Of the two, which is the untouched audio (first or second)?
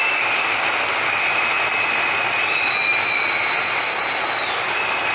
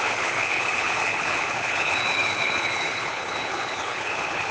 first